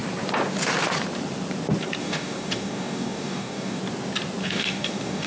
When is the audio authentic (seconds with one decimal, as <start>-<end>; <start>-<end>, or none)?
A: 0.0-2.0; 3.8-4.4